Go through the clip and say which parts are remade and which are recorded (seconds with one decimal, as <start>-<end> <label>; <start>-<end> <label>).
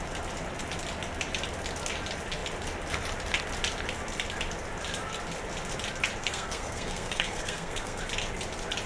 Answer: 0.0-6.2 recorded; 6.2-8.0 remade; 8.0-8.9 recorded